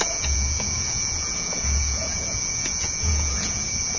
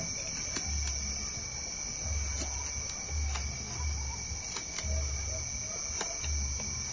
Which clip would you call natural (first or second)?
second